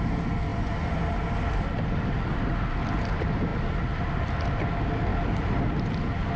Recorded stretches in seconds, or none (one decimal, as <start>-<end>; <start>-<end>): 0.0-6.4